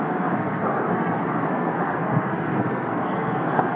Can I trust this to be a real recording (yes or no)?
no